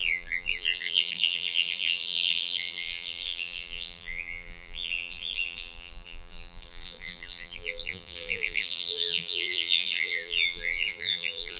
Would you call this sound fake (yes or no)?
yes